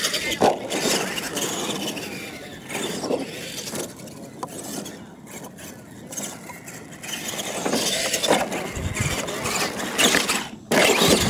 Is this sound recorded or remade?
recorded